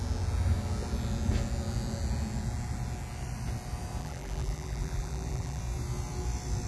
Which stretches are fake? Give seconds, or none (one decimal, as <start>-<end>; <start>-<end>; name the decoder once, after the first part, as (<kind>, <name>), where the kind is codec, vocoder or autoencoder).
4.0-5.6 (vocoder, BigVGAN v2)

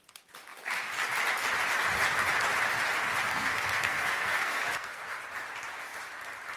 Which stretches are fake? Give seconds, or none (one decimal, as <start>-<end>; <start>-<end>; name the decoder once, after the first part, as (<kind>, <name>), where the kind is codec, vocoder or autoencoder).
3.3-5.2 (codec, SNAC)

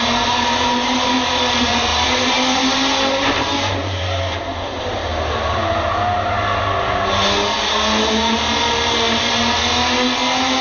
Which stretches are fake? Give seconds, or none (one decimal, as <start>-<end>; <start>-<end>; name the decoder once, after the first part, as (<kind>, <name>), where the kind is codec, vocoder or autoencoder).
0.0-5.1 (vocoder, BigVGAN v2); 8.6-9.6